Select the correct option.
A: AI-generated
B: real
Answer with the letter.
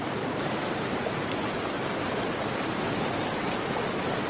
A